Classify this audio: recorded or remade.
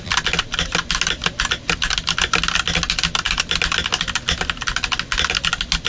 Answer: recorded